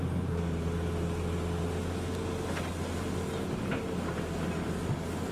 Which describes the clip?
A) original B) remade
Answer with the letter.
A